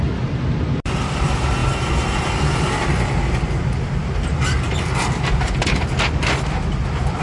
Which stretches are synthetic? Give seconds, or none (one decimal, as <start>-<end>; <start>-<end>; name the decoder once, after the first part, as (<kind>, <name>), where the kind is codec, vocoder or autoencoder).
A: none